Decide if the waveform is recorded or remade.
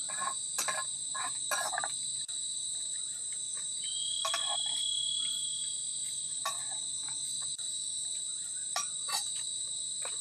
remade